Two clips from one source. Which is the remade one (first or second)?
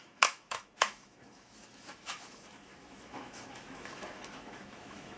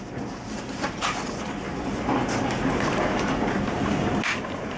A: first